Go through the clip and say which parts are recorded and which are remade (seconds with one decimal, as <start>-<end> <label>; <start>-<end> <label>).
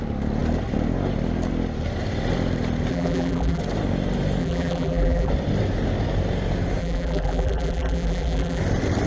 0.0-2.9 recorded; 2.9-3.6 remade; 3.6-4.4 recorded; 4.4-5.3 remade; 5.3-6.8 recorded; 6.8-8.6 remade; 8.6-9.1 recorded